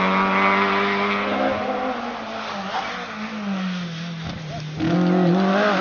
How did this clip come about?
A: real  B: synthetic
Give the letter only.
A